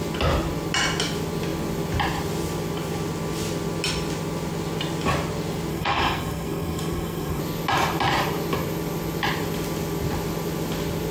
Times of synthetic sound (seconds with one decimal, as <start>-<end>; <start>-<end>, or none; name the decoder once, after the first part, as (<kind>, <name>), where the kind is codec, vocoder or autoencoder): 5.7-7.4 (codec, SNAC)